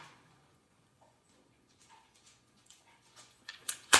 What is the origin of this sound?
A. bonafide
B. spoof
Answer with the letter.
B